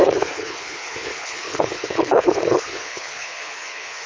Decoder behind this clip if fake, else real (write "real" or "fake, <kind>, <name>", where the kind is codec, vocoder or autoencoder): fake, codec, HILCodec